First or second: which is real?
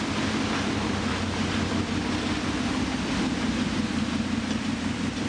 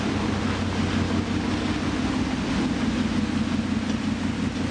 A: second